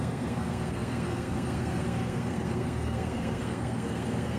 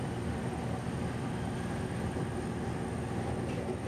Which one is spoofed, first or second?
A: first